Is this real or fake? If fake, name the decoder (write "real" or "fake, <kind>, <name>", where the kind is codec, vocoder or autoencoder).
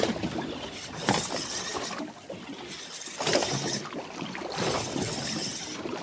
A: real